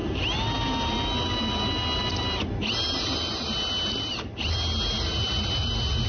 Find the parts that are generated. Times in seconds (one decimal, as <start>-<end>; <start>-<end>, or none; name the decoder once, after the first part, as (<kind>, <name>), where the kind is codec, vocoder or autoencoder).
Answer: none